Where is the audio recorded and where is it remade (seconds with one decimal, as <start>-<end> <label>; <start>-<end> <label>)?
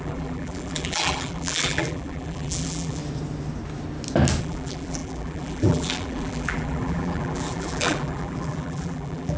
0.0-3.0 remade; 3.0-4.4 recorded; 4.4-9.4 remade